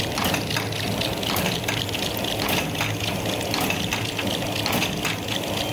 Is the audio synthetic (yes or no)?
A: no